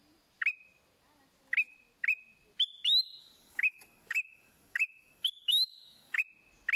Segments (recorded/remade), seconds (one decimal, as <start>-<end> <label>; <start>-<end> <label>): 0.0-3.2 recorded; 3.2-6.2 remade; 6.2-6.8 recorded